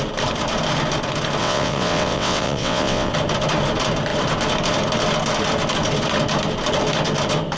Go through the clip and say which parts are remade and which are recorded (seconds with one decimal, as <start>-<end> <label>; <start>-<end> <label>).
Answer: 0.0-1.4 recorded; 1.4-3.1 remade; 3.1-7.6 recorded